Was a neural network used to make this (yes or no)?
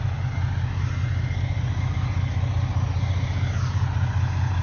no